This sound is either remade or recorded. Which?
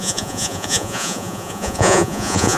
remade